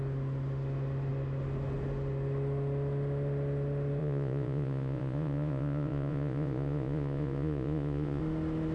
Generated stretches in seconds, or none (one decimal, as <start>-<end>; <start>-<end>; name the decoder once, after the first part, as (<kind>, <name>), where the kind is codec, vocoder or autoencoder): 4.0-8.2 (vocoder, Vocos)